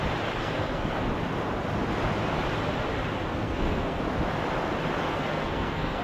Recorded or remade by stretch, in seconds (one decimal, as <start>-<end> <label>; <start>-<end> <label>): 0.0-0.4 recorded; 0.4-1.0 remade; 1.0-3.3 recorded; 3.3-4.0 remade; 4.0-5.0 recorded; 5.0-6.0 remade